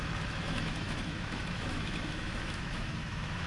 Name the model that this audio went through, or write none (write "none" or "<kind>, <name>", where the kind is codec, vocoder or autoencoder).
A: autoencoder, DAC-VAE